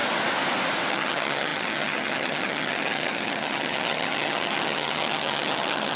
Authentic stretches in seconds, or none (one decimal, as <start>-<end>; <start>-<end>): 0.0-0.9